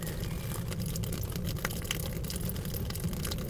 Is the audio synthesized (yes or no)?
no